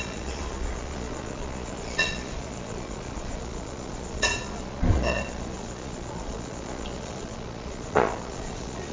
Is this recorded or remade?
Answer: remade